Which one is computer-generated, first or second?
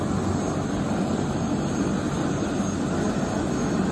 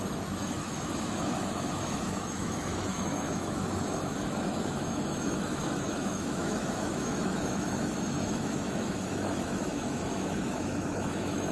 second